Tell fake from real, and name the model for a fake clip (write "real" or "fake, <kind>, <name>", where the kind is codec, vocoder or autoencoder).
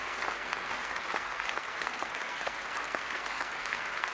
fake, codec, SNAC